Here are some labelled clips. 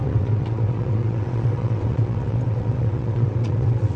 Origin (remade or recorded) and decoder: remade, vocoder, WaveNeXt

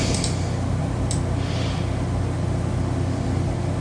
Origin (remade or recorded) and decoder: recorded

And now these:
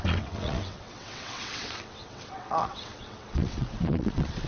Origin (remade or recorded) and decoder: remade, vocoder, WaveNeXt